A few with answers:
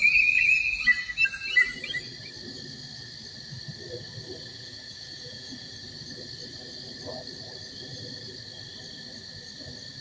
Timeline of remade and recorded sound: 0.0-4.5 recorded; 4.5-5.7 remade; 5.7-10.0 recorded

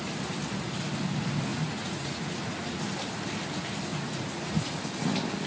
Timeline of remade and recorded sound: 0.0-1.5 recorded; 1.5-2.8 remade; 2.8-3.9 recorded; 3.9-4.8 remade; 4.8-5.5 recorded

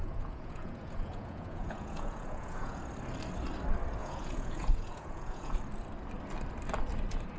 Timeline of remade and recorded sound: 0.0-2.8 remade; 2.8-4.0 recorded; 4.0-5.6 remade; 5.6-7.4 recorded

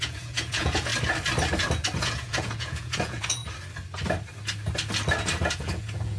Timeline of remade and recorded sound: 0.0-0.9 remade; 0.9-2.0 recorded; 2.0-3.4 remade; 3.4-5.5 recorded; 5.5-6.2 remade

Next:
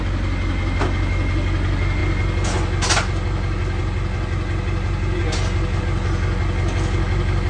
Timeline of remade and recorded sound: 0.0-7.5 recorded

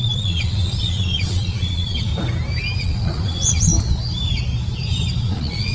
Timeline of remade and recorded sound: 0.0-2.1 remade; 2.1-2.8 recorded; 2.8-3.7 remade; 3.7-5.2 recorded; 5.2-5.7 remade

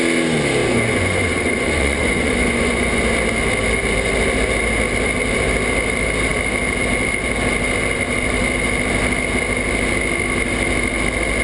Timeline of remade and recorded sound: 0.0-0.6 recorded; 0.6-3.0 remade; 3.0-11.4 recorded

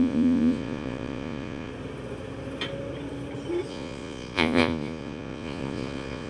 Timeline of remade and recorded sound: 0.0-1.7 remade; 1.7-3.7 recorded; 3.7-6.3 remade